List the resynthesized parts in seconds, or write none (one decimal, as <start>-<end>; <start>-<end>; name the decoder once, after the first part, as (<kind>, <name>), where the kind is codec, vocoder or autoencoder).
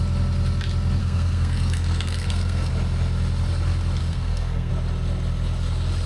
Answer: 1.0-2.7 (codec, SNAC); 4.0-4.7